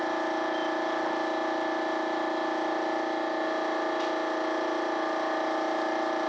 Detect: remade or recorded recorded